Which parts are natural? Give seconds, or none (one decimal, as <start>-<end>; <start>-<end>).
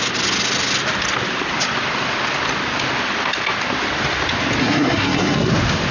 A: 0.0-4.6; 5.5-5.9